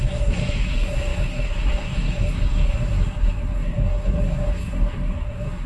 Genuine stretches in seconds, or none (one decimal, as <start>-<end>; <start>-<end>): none